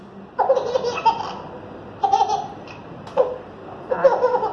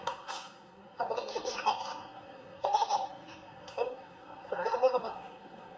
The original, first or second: first